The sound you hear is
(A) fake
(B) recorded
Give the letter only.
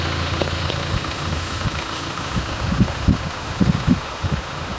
A